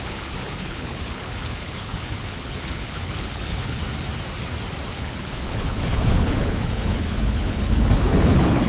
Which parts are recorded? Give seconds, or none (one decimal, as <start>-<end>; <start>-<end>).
3.8-4.9